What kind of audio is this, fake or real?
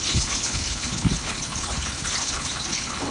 fake